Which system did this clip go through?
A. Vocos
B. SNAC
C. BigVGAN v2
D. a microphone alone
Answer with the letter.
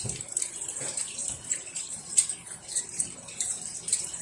C